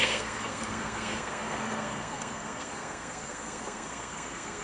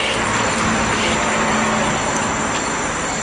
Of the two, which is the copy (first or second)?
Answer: first